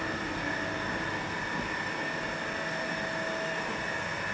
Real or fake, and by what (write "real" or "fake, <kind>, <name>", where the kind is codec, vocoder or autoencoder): real